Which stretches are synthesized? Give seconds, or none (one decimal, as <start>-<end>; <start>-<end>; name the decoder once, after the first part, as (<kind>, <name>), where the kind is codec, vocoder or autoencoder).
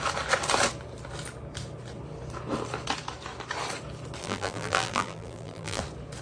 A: 4.2-5.8 (vocoder, BigVGAN v2)